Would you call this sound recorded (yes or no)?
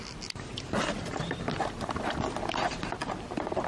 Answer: yes